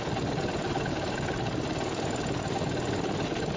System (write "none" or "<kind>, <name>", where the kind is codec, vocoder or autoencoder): none